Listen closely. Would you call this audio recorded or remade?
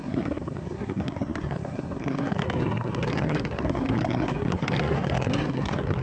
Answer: remade